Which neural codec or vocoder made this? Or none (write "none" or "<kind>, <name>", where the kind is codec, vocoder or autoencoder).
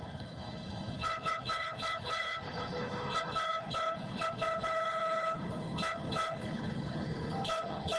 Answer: codec, HILCodec